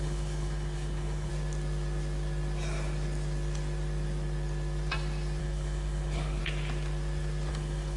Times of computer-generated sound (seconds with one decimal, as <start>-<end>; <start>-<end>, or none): 0.0-1.3; 5.4-6.4; 7.5-8.0